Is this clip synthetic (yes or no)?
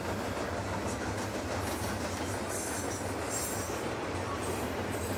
no